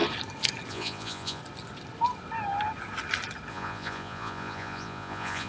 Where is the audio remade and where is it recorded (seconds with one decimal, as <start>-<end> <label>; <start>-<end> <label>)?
0.0-0.7 recorded; 0.7-1.4 remade; 1.4-3.5 recorded; 3.5-5.5 remade